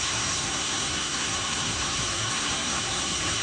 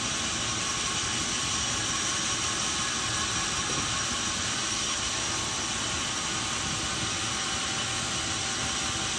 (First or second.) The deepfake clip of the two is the first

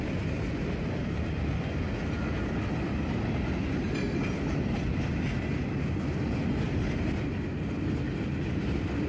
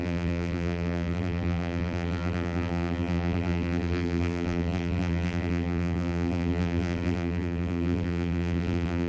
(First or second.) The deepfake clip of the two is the second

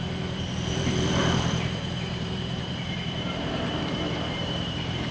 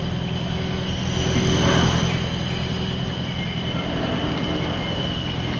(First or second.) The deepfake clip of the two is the first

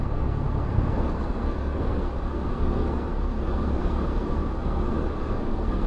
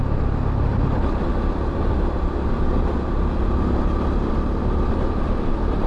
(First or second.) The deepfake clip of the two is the first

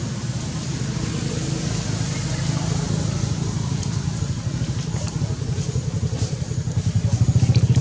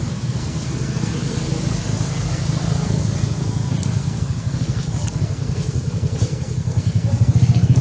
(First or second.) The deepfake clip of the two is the second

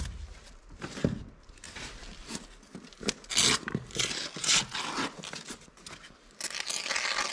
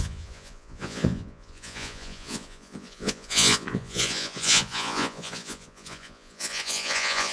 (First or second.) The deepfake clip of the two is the second